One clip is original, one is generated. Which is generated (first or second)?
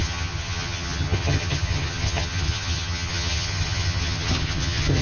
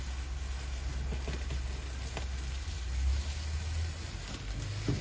first